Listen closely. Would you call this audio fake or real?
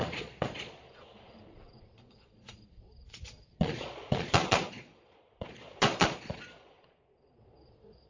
fake